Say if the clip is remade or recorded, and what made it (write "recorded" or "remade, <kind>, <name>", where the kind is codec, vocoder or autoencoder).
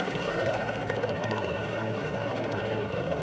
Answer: remade, codec, SNAC